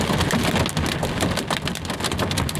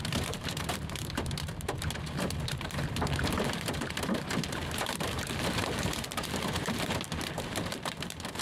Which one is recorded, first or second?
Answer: first